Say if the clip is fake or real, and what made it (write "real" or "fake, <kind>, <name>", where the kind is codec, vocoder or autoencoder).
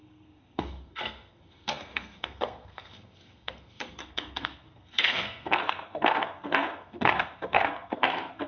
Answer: fake, codec, SNAC